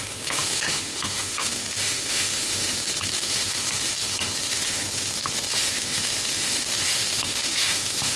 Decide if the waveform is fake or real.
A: fake